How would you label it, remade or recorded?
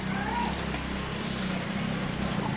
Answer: recorded